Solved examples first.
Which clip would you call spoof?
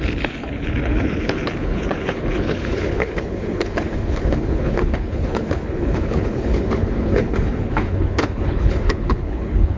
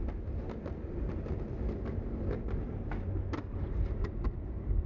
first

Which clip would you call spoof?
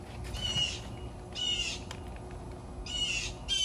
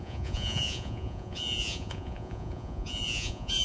second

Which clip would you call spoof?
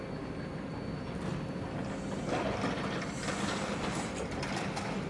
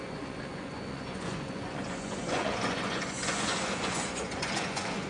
second